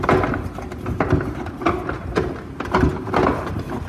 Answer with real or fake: real